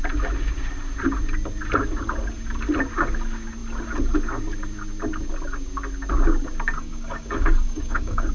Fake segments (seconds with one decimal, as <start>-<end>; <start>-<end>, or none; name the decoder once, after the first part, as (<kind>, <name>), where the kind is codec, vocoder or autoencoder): 6.8-8.3 (codec, DAC)